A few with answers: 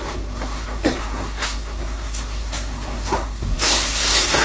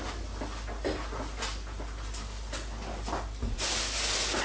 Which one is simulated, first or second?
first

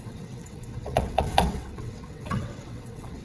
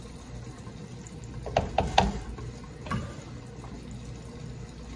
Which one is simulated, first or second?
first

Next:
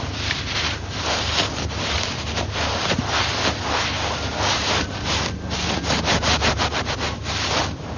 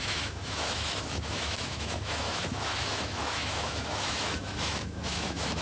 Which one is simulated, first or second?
second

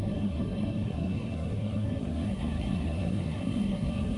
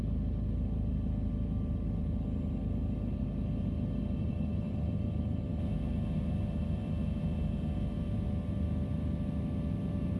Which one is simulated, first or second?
first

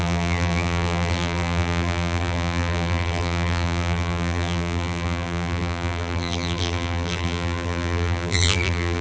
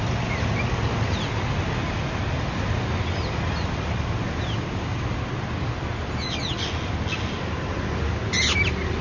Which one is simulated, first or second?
first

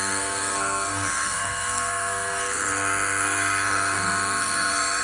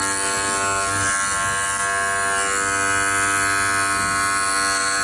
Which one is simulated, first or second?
first